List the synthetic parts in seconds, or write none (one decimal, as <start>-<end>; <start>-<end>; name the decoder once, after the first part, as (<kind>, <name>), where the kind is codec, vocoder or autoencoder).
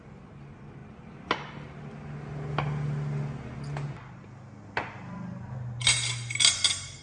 none